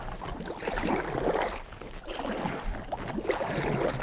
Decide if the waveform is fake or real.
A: real